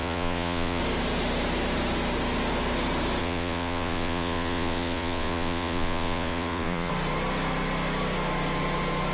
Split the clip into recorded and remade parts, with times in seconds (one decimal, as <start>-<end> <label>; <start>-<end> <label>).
0.0-0.8 remade; 0.8-3.2 recorded; 3.2-6.9 remade; 6.9-9.1 recorded